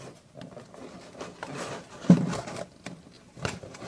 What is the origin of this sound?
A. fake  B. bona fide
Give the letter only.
B